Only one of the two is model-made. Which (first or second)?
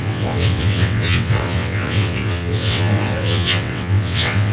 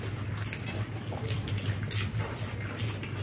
first